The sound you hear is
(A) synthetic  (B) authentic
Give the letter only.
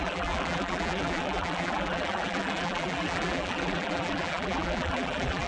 A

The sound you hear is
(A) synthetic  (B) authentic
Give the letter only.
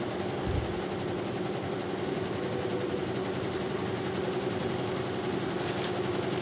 B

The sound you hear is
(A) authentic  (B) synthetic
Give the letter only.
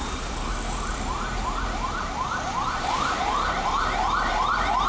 B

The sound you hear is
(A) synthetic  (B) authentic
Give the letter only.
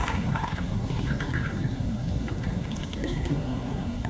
A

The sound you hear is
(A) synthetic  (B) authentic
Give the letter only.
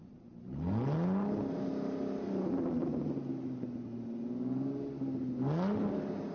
B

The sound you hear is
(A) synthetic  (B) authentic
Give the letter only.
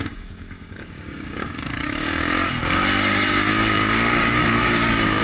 A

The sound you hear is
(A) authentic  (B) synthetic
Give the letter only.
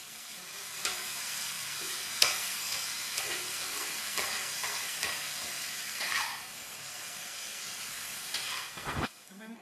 B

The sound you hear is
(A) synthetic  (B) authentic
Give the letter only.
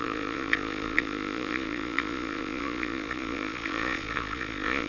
A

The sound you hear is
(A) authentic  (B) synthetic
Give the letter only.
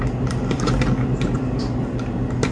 A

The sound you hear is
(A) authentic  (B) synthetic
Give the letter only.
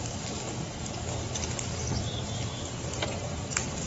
A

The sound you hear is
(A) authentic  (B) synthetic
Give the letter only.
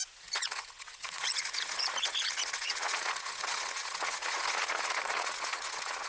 B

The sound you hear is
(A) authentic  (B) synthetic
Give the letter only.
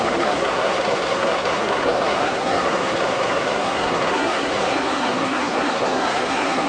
B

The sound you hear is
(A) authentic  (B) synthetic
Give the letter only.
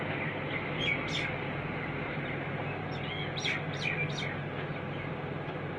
A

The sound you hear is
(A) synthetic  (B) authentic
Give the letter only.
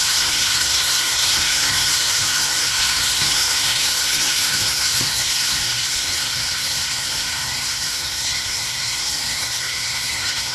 A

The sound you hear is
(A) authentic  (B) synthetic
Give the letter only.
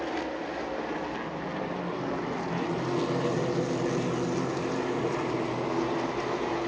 A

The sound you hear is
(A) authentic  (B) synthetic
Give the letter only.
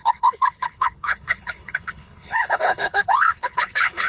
B